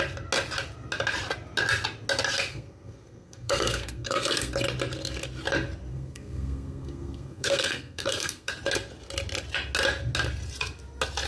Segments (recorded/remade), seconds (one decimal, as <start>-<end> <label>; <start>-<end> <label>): 0.0-2.5 recorded; 2.5-4.5 remade; 4.5-5.9 recorded; 5.9-8.5 remade; 8.5-11.3 recorded